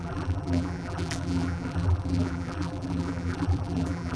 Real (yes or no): no